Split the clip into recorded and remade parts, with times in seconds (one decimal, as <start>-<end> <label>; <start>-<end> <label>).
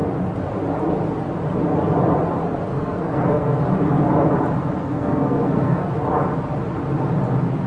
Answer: 0.0-2.7 recorded; 2.7-3.6 remade; 3.6-4.8 recorded; 4.8-5.9 remade; 5.9-7.7 recorded